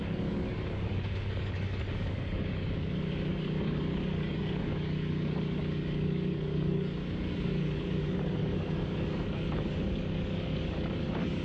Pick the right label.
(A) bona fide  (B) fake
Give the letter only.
B